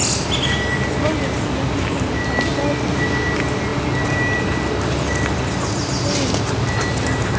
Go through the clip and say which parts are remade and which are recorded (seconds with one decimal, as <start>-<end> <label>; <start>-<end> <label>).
0.0-7.4 recorded